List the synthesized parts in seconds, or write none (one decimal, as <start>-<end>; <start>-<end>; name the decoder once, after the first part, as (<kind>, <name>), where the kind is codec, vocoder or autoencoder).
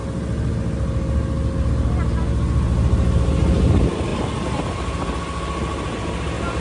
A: none